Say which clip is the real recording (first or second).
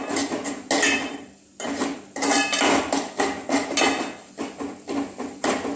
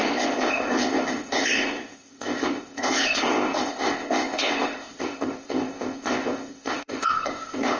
first